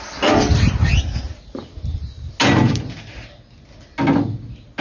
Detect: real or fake real